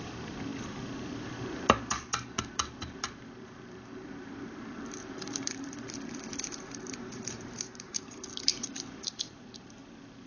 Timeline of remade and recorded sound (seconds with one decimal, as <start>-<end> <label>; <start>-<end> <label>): 0.0-9.8 remade; 9.8-10.3 recorded